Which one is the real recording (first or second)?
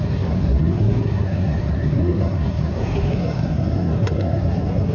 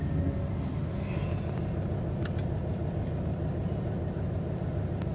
second